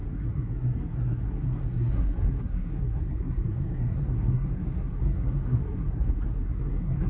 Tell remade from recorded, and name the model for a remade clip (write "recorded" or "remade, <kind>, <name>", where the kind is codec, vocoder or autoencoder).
remade, codec, SNAC